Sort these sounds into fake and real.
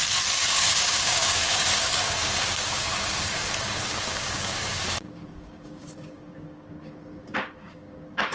fake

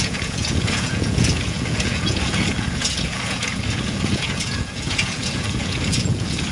fake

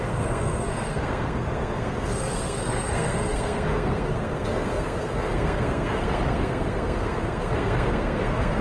fake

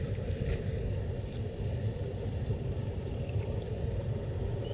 real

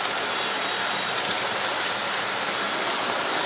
real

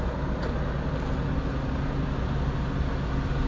real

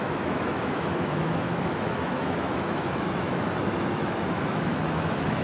fake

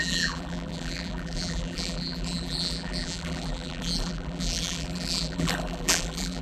fake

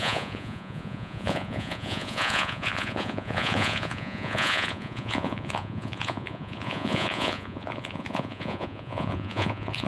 fake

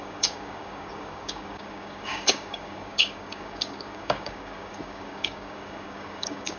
fake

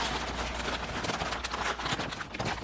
real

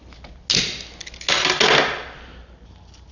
real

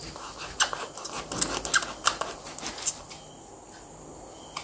real